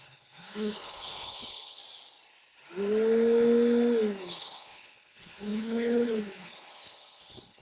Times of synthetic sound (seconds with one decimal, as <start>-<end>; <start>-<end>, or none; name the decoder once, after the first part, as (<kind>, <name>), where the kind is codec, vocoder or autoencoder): 0.0-1.8 (codec, HILCodec); 4.2-7.6